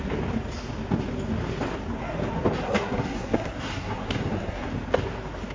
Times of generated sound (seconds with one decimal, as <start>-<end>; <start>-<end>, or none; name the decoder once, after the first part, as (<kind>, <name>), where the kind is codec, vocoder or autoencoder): 2.6-4.7 (codec, SNAC)